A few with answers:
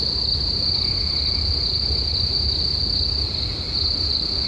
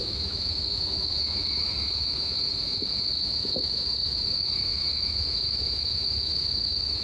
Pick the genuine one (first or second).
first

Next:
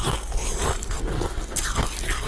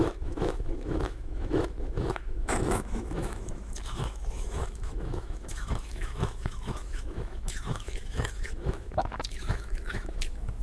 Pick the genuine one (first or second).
first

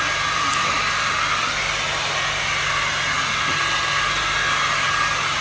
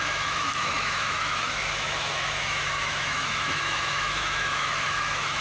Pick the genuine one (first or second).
first